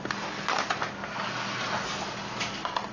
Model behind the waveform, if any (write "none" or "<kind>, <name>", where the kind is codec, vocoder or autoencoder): none